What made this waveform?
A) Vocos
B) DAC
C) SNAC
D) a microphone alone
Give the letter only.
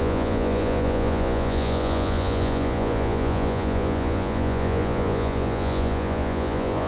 A